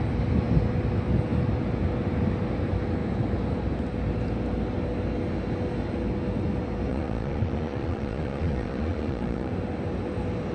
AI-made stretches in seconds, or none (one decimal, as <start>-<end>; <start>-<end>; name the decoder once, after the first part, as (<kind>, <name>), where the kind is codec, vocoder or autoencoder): 6.9-9.5 (vocoder, Vocos)